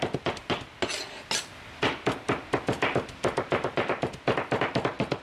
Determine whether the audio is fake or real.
real